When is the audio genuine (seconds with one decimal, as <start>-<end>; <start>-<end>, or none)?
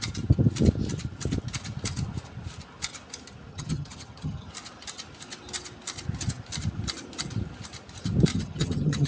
0.0-3.5; 4.5-8.3